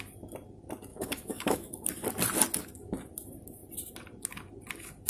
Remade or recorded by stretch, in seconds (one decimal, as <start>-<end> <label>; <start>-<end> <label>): 0.0-0.9 recorded; 0.9-1.9 remade; 1.9-5.1 recorded